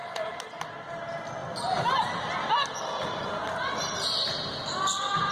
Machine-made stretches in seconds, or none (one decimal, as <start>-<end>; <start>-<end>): 1.4-2.5